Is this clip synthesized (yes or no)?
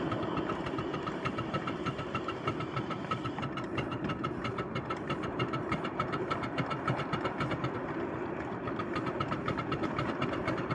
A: yes